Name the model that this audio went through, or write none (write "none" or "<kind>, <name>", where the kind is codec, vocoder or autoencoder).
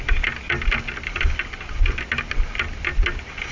none